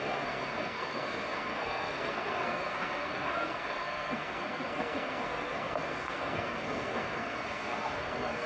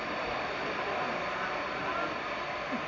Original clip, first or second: second